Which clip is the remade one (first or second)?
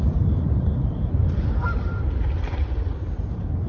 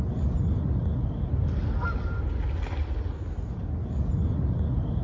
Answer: first